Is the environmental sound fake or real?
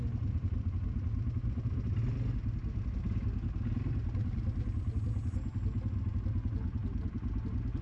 real